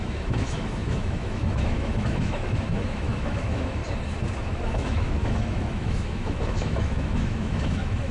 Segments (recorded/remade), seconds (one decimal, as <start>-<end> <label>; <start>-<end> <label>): 0.0-3.8 remade; 3.8-4.4 recorded; 4.4-8.1 remade